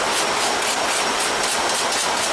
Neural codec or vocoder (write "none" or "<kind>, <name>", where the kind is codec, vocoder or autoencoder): none